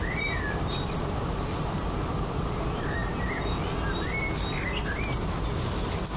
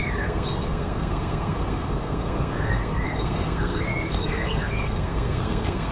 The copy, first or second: second